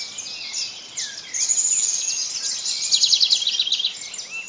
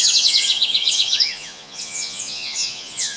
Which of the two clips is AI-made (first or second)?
second